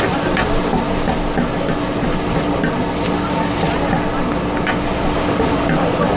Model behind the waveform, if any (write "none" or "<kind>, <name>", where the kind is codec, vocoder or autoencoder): none